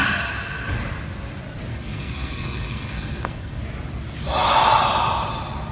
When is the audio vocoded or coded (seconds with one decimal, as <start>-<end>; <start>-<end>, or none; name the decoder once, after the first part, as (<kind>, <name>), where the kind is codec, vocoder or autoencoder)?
1.7-3.6 (codec, SNAC)